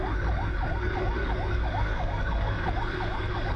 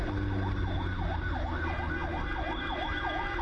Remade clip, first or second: first